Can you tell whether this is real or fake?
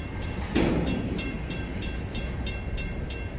real